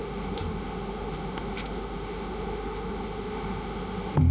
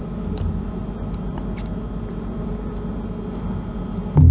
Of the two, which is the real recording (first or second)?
second